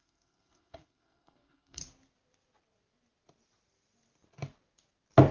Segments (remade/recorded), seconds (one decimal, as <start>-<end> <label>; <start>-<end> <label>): 0.0-1.8 remade; 1.8-5.3 recorded